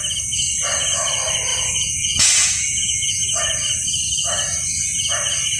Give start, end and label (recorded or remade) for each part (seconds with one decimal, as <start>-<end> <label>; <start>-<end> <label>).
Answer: 0.0-1.5 recorded; 1.5-3.4 remade; 3.4-5.6 recorded